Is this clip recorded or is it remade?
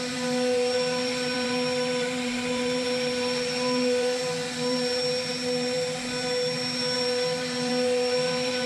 remade